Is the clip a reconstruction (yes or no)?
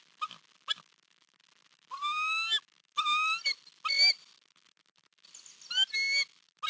no